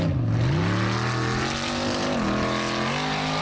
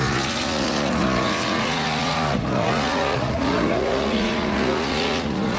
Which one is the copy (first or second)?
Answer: second